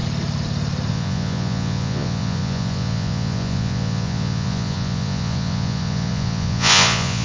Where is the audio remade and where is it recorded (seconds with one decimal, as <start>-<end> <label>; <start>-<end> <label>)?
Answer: 0.0-0.9 recorded; 0.9-7.2 remade